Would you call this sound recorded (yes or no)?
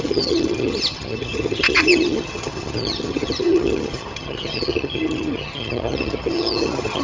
no